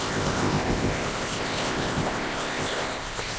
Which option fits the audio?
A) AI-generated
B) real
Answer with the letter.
A